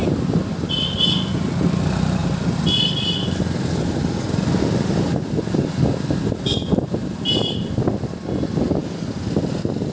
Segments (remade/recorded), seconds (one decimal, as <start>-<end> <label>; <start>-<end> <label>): 0.0-9.9 recorded